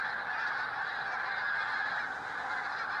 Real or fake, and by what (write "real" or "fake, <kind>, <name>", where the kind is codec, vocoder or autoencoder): real